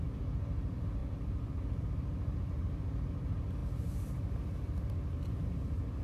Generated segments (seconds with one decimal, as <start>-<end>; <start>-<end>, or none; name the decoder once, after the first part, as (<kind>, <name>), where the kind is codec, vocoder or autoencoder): none

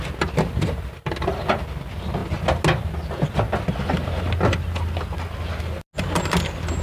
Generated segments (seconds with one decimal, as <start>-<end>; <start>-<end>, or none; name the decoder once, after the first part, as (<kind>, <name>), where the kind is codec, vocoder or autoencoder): none

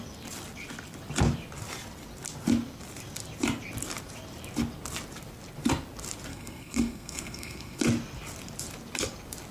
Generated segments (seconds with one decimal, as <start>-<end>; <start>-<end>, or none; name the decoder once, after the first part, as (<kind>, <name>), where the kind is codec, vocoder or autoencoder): 6.3-7.8 (codec, SNAC)